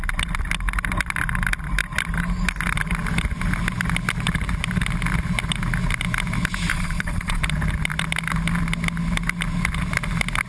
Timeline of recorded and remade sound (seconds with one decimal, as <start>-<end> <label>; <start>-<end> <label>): 0.0-6.7 recorded; 6.7-7.4 remade; 7.4-10.5 recorded